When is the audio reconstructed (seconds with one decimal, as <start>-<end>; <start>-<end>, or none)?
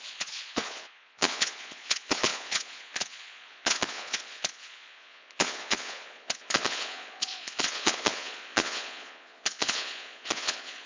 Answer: 0.0-10.9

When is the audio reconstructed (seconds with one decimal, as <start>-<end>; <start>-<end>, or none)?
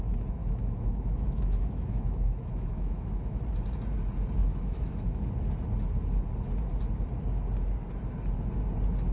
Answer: 0.4-3.4; 4.4-5.2